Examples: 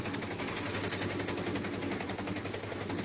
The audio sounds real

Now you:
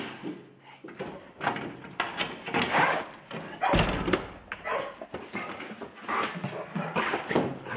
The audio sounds real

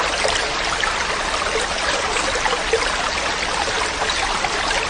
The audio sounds real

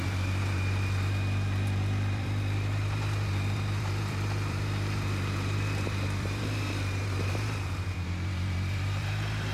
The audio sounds fake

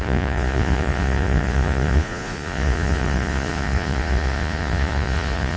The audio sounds fake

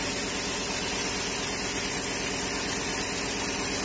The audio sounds real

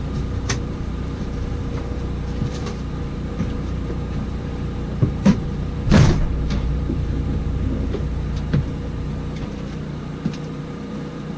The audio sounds fake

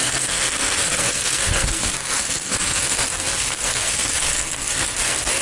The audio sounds fake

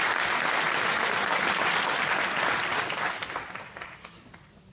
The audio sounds real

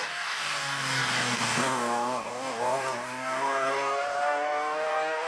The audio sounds fake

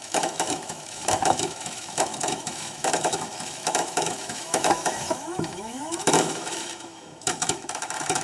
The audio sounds fake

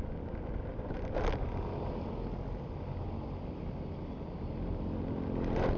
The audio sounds real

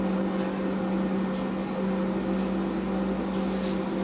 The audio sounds real